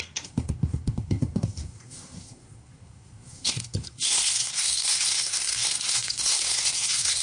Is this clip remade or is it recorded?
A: remade